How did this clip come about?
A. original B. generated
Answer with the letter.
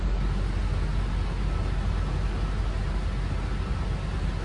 A